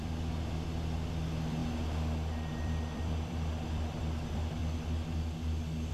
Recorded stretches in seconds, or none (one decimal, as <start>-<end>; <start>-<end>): 1.6-2.5; 4.6-5.9